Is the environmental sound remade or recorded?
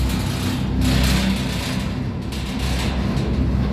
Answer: recorded